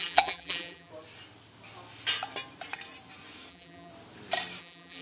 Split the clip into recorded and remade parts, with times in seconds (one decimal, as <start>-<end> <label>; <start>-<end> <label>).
0.0-0.9 remade; 0.9-3.5 recorded; 3.5-3.9 remade; 3.9-4.6 recorded; 4.6-5.0 remade

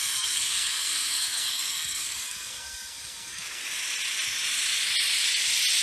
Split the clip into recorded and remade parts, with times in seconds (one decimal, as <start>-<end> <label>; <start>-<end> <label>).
0.0-3.6 remade; 3.6-5.8 recorded

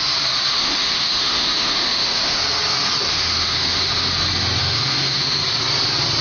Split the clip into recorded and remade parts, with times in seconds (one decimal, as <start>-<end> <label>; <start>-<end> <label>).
0.0-0.5 recorded; 0.5-2.4 remade; 2.4-3.1 recorded; 3.1-4.1 remade; 4.1-4.6 recorded; 4.6-5.4 remade; 5.4-6.2 recorded

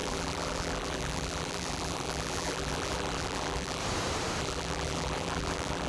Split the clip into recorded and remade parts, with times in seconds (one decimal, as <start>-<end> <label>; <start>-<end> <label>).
0.0-3.8 remade; 3.8-4.4 recorded; 4.4-5.9 remade

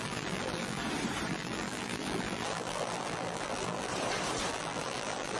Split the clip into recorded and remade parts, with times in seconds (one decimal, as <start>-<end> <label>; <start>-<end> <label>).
0.0-0.8 remade; 0.8-1.3 recorded; 1.3-3.9 remade; 3.9-4.5 recorded; 4.5-5.4 remade

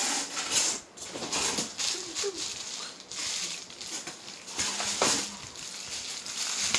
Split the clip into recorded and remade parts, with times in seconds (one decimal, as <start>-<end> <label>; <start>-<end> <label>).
0.0-6.8 recorded

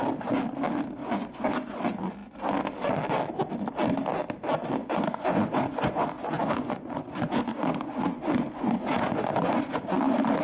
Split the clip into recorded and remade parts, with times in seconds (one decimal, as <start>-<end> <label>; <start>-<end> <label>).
0.0-1.0 recorded; 1.0-1.8 remade; 1.8-4.8 recorded; 4.8-9.8 remade; 9.8-10.4 recorded